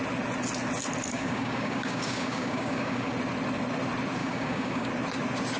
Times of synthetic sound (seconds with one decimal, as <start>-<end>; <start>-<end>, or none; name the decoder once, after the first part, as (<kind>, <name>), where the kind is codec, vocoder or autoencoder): 1.1-3.1 (codec, DAC); 4.2-4.9